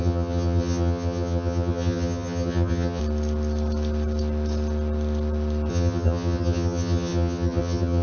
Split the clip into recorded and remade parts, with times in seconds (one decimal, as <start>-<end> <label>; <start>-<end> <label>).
0.0-3.0 remade; 3.0-5.7 recorded; 5.7-8.0 remade